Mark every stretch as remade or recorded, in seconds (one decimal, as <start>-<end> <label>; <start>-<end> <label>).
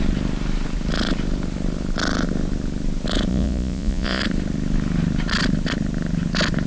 0.0-3.3 recorded; 3.3-4.2 remade; 4.2-6.7 recorded